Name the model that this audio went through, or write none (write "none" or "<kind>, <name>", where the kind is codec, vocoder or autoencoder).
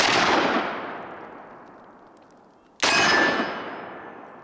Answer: none